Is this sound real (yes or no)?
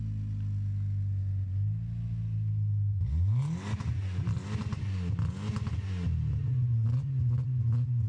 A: yes